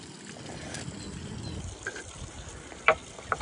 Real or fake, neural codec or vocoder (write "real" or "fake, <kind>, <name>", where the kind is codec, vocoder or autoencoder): real